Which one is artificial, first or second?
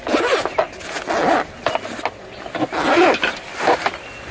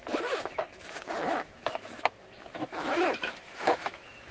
second